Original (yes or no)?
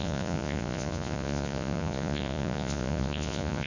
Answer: no